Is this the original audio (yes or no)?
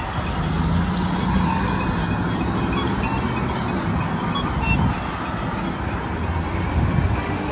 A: yes